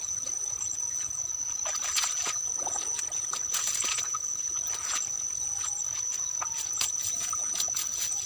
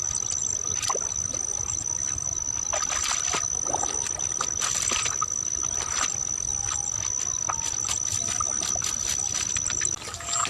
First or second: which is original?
second